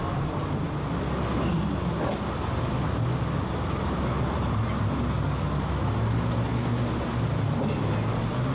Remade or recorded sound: recorded